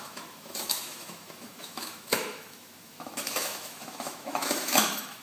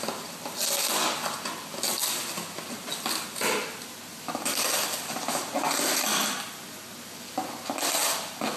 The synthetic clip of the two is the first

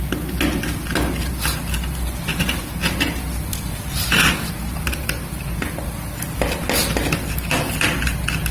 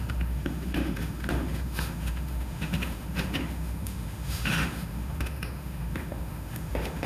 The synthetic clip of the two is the second